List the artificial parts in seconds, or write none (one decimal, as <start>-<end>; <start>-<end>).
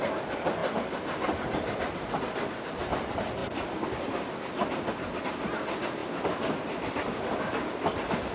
0.0-3.4; 5.2-8.3